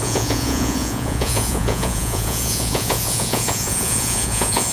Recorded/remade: remade